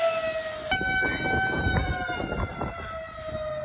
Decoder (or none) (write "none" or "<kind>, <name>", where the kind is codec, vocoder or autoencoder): none